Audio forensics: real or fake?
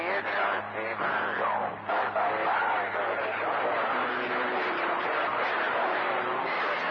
real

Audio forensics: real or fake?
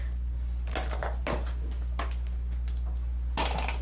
real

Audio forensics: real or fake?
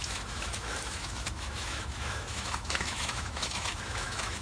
fake